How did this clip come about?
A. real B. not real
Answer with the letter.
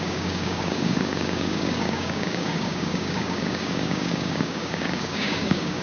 B